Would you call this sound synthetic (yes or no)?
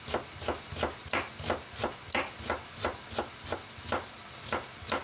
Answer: no